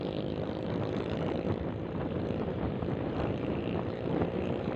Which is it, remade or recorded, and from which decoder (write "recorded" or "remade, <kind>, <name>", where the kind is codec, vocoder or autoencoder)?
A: remade, vocoder, BigVGAN v2